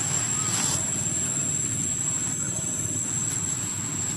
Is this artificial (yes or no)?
yes